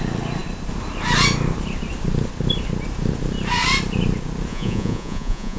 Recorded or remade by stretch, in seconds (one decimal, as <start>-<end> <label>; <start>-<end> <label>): 0.0-4.5 recorded; 4.5-5.6 remade